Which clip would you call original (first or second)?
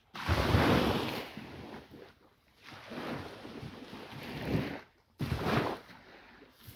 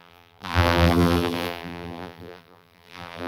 first